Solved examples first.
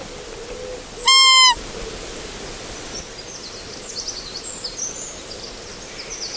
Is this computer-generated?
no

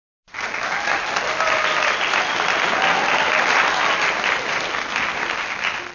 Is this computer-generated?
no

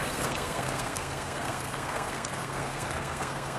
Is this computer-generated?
yes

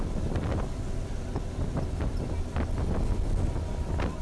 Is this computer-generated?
no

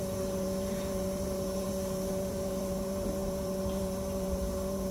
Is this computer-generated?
yes